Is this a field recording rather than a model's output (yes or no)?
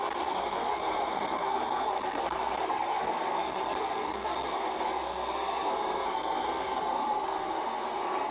no